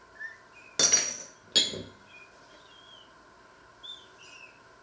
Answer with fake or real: real